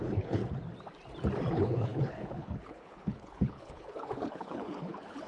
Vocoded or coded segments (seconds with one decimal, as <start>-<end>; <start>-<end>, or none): 0.0-0.4; 1.5-5.3